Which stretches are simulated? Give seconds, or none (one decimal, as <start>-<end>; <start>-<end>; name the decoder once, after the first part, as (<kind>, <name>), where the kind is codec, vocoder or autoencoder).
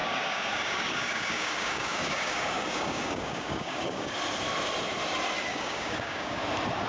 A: 0.0-4.1 (codec, DAC); 5.5-6.4